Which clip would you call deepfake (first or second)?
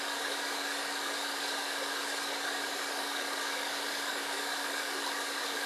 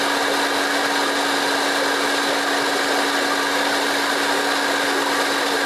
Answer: first